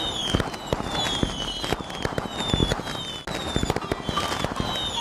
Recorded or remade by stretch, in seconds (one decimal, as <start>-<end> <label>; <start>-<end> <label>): 0.0-5.0 recorded